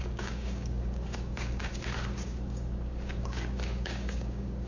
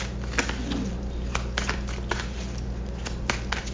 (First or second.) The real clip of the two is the second